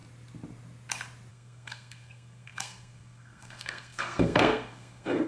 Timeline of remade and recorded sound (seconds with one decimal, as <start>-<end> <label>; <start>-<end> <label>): 0.0-1.3 recorded; 1.3-5.3 remade